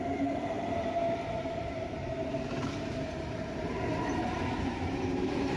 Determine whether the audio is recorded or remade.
remade